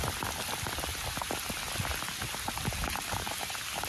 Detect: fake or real real